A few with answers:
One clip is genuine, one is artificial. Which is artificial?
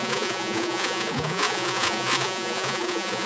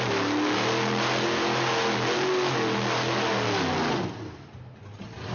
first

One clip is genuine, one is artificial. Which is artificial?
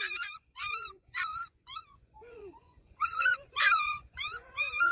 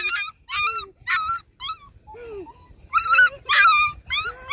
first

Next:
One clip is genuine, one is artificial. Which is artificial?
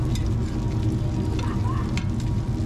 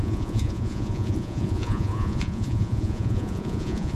second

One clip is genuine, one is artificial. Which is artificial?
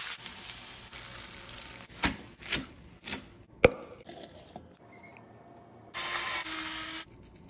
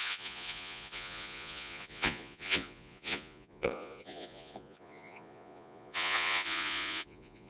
second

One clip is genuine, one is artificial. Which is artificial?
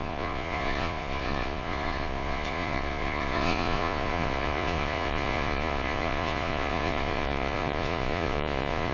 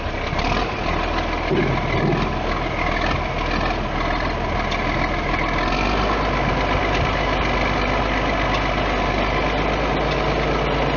first